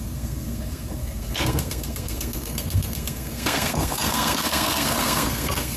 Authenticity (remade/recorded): remade